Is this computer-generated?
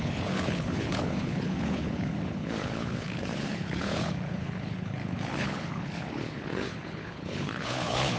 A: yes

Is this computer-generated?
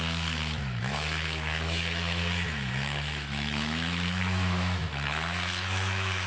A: yes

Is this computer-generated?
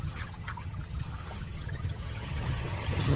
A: yes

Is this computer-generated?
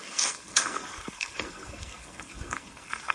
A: yes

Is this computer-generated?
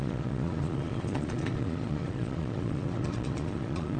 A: yes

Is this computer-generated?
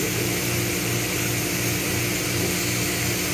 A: no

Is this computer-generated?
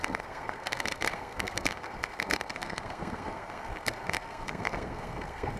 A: yes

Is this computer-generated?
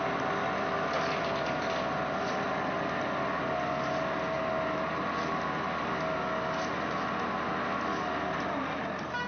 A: no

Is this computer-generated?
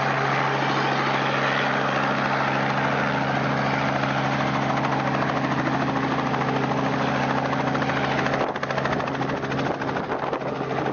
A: no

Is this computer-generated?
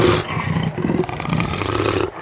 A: no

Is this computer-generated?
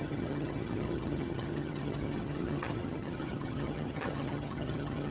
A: yes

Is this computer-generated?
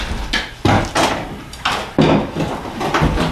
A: no